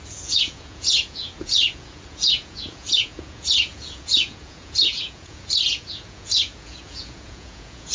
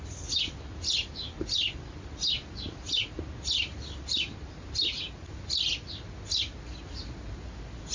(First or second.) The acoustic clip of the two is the second